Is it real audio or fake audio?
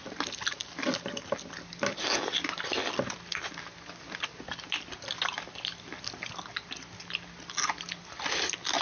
real